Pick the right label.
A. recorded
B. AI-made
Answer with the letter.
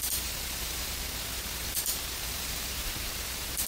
B